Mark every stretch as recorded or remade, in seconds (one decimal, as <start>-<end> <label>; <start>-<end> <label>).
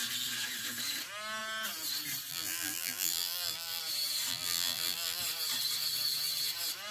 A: 0.0-2.3 recorded; 2.3-3.8 remade; 3.8-4.3 recorded; 4.3-5.2 remade; 5.2-6.9 recorded